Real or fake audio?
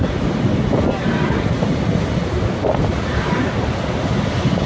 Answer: real